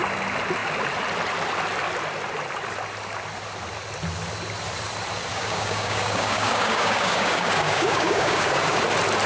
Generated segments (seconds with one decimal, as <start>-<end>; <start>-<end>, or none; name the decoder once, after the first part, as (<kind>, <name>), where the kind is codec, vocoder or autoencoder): 5.3-8.8 (codec, DAC)